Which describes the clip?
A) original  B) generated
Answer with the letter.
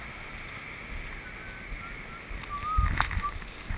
A